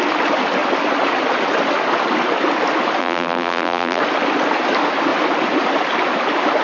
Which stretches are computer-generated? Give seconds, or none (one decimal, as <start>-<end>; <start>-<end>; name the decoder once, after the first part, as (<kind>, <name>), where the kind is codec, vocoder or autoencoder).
3.0-4.0 (vocoder, BigVGAN v2)